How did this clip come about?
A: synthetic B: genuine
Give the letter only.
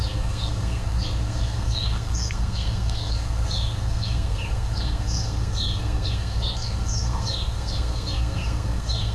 A